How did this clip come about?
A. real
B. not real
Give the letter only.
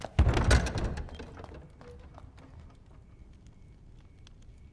A